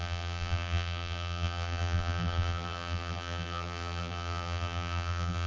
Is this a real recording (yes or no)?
no